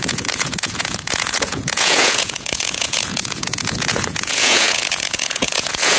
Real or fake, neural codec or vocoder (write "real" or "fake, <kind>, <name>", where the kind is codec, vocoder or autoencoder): fake, vocoder, Vocos